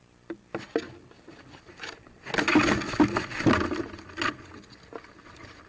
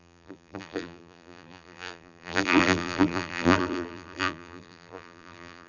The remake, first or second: second